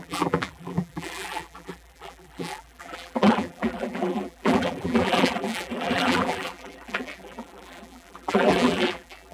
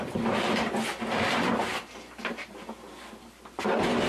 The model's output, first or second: first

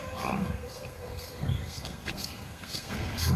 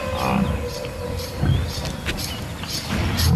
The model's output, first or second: first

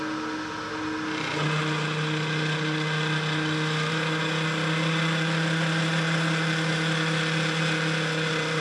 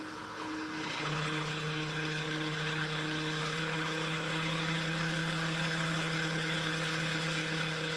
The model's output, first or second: second